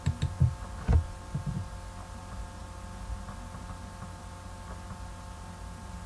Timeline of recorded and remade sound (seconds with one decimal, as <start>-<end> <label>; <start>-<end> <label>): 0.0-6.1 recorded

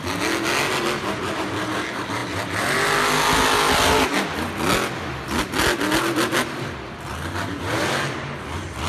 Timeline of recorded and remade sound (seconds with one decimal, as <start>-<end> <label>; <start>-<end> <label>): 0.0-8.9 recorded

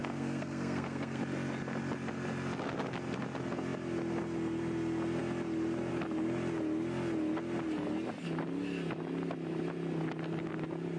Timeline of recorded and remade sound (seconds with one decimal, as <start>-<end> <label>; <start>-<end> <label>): 0.0-1.2 remade; 1.2-11.0 recorded

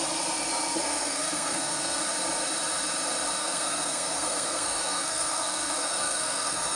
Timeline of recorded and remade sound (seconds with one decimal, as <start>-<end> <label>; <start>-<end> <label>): 0.0-0.8 recorded; 0.8-2.0 remade; 2.0-3.4 recorded; 3.4-6.8 remade

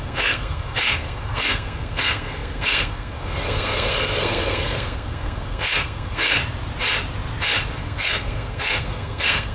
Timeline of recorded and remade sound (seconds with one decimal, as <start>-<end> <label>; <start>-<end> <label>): 0.0-6.4 remade; 6.4-7.8 recorded; 7.8-9.5 remade